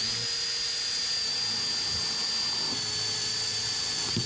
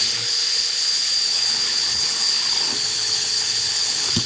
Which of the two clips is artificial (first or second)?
second